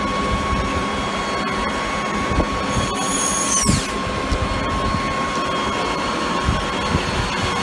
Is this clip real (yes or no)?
yes